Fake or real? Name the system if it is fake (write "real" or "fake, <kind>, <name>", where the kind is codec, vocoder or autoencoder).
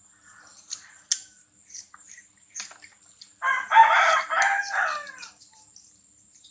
real